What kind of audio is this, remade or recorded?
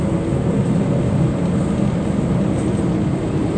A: recorded